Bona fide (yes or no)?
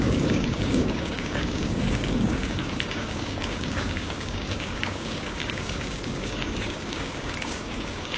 no